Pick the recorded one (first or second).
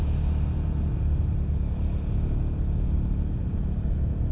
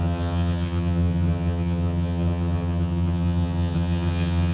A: first